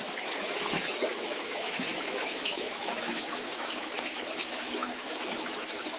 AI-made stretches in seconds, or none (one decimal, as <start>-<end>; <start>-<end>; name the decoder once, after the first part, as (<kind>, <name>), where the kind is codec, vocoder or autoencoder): 0.0-6.0 (autoencoder, DAC-VAE)